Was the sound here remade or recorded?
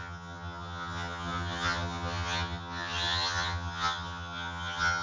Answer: remade